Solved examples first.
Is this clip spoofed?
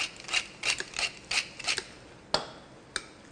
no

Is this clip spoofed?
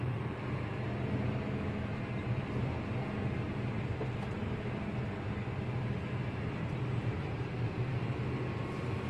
no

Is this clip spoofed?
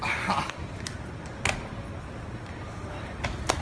no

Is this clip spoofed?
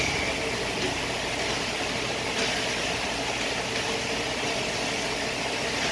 no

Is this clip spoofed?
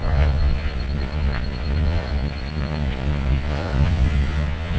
yes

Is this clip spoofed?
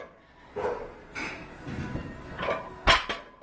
no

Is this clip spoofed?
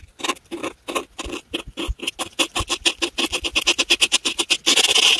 no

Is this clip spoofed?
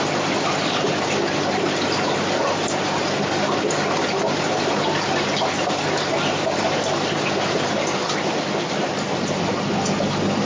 no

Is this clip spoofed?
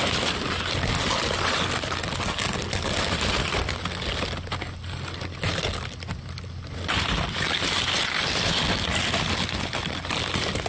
no